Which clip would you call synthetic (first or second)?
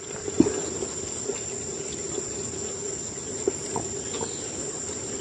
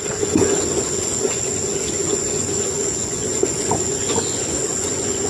second